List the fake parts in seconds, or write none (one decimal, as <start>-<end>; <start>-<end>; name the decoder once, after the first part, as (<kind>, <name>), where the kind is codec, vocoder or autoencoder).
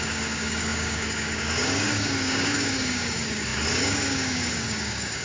0.0-5.2 (codec, DAC)